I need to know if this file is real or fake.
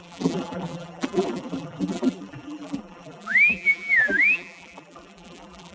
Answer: fake